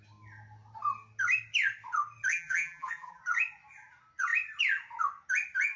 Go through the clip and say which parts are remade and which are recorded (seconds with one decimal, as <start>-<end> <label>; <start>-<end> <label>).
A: 0.0-2.3 recorded; 2.3-3.2 remade; 3.2-5.8 recorded